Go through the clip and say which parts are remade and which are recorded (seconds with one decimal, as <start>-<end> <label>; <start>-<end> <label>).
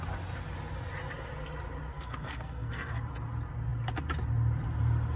0.0-1.9 recorded; 1.9-2.9 remade; 2.9-5.2 recorded